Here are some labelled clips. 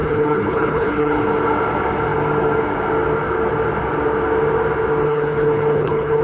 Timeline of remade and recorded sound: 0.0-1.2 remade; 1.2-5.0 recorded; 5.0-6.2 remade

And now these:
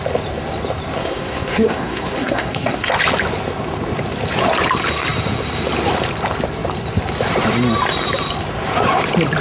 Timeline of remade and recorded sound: 0.0-1.0 recorded; 1.0-2.9 remade; 2.9-9.4 recorded